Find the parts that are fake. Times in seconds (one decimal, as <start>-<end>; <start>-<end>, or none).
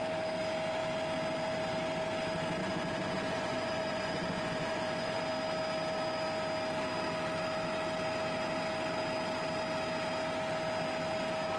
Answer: 2.6-5.2